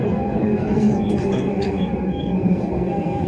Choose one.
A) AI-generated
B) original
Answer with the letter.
A